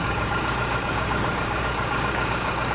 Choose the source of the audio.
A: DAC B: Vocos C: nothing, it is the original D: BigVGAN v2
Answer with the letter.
A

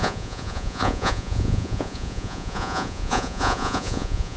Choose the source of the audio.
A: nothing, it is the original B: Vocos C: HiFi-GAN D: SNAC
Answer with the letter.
B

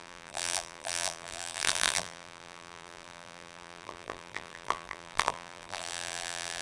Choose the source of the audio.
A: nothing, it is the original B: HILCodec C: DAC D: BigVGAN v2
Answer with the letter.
D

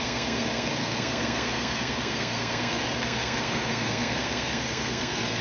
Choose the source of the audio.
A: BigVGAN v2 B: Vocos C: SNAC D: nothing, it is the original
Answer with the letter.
C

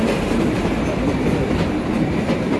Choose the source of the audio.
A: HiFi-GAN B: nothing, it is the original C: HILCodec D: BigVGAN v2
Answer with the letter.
D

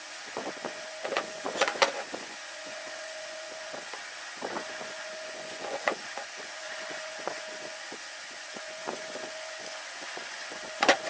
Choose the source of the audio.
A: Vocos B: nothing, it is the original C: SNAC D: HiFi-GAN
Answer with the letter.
A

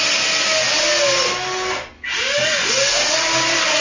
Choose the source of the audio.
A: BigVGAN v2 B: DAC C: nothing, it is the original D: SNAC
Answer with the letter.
C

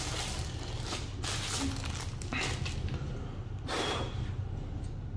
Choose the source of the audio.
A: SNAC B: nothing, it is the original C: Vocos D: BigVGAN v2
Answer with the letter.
B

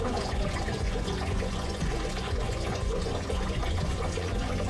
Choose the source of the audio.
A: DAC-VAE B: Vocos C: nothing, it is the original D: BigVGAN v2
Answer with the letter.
B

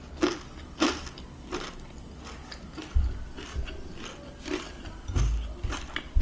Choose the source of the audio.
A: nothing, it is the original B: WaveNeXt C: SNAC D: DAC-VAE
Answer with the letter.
A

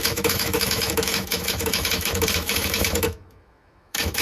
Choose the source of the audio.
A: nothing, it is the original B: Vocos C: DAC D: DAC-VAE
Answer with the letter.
D